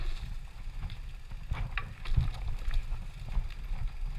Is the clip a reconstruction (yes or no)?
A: no